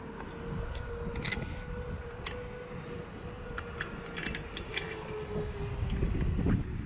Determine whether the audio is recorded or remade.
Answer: recorded